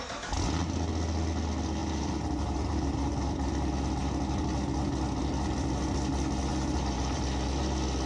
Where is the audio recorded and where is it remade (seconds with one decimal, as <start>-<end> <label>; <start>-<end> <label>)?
0.0-1.8 recorded; 1.8-3.5 remade; 3.5-6.5 recorded; 6.5-7.2 remade; 7.2-8.1 recorded